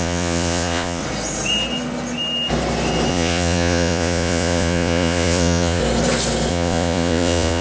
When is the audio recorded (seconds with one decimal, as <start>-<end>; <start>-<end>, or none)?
1.0-3.1; 5.8-6.5